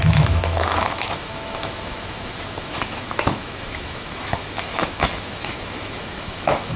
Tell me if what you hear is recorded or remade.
remade